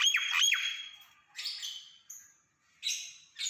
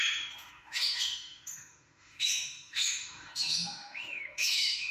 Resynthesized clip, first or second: second